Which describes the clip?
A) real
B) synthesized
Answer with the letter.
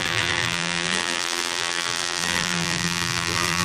B